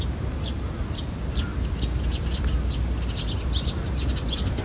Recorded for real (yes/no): yes